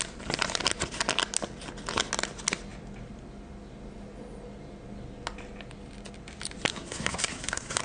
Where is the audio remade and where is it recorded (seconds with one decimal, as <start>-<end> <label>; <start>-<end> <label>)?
0.0-6.7 recorded; 6.7-7.8 remade

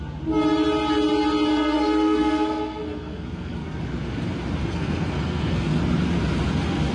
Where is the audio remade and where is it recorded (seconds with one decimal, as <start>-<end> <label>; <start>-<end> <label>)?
0.0-1.5 recorded; 1.5-3.8 remade; 3.8-4.6 recorded; 4.6-5.8 remade; 5.8-6.9 recorded

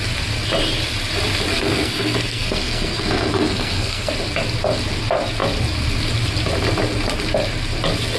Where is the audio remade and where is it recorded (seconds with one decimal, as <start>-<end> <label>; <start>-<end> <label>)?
0.0-1.5 recorded; 1.5-4.1 remade; 4.1-8.2 recorded